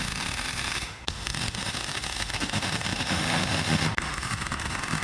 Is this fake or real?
fake